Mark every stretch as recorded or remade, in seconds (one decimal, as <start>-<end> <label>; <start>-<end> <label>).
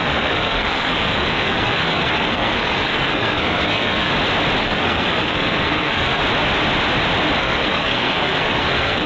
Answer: 0.0-4.1 remade; 4.1-4.6 recorded; 4.6-6.2 remade; 6.2-7.4 recorded; 7.4-9.1 remade